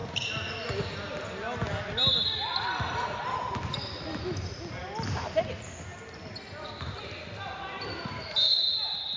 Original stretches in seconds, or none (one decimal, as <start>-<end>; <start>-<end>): 0.0-9.2